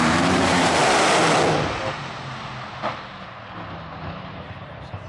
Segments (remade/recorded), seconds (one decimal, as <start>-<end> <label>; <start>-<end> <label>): 0.0-0.8 remade; 0.8-3.9 recorded; 3.9-5.1 remade